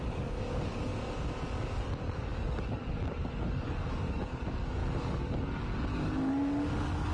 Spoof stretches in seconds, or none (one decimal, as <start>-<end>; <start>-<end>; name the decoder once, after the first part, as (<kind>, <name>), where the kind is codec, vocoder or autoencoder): 0.0-0.9 (codec, DAC); 1.6-7.1